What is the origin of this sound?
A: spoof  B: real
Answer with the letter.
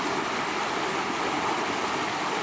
B